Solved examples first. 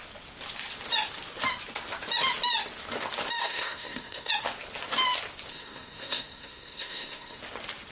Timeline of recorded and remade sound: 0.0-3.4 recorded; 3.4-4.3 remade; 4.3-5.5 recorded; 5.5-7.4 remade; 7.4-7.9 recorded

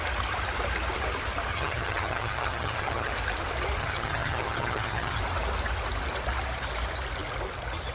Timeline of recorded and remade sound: 0.0-1.5 recorded; 1.5-3.1 remade; 3.1-3.8 recorded; 3.8-5.2 remade; 5.2-7.9 recorded

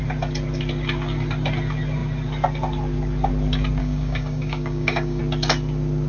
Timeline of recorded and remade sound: 0.0-3.8 recorded; 3.8-5.2 remade; 5.2-6.1 recorded

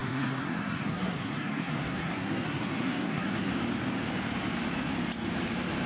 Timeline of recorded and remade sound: 0.0-3.5 remade; 3.5-5.9 recorded

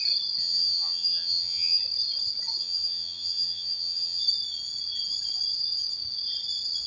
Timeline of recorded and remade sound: 0.0-0.4 recorded; 0.4-1.8 remade; 1.8-2.6 recorded; 2.6-4.2 remade; 4.2-6.9 recorded

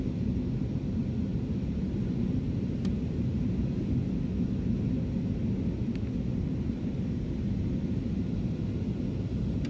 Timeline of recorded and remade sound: 0.0-1.3 recorded; 1.3-3.9 remade; 3.9-9.7 recorded

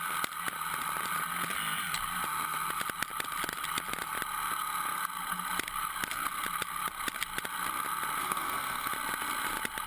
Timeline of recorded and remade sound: 0.0-8.2 recorded; 8.2-8.9 remade; 8.9-9.9 recorded